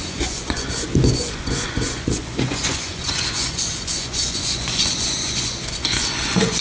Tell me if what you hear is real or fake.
fake